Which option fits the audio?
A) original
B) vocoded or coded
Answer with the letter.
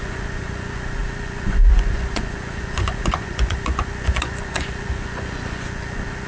B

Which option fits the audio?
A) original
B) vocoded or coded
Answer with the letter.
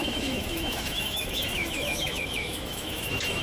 B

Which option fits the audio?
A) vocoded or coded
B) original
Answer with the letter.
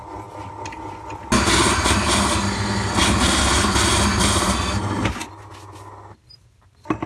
B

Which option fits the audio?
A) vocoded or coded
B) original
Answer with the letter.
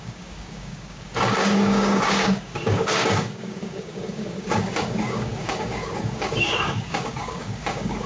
A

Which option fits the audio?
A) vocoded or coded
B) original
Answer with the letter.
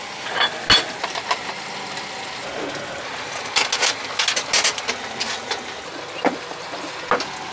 B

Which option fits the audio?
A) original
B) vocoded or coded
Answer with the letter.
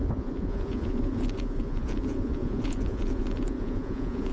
B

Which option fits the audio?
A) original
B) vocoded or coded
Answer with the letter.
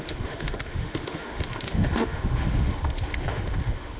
B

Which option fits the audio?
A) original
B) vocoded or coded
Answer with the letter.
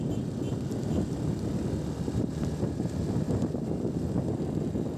A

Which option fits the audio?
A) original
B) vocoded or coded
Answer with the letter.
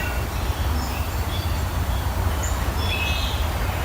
A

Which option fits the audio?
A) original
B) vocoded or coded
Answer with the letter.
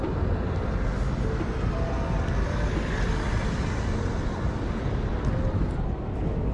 A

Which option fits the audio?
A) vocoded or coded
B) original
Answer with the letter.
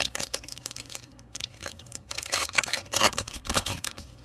A